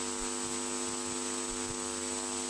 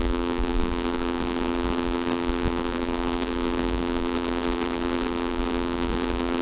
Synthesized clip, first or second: second